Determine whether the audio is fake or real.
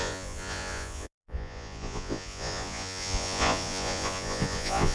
fake